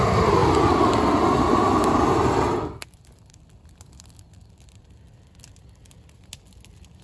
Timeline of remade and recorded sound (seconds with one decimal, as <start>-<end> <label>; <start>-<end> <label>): 0.0-7.0 recorded